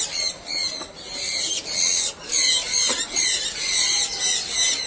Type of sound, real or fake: real